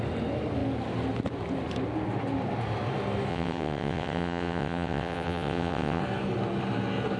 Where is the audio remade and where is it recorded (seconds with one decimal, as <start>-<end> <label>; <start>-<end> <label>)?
0.0-3.3 recorded; 3.3-6.0 remade; 6.0-7.2 recorded